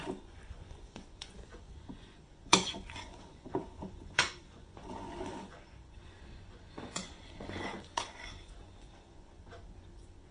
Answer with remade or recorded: remade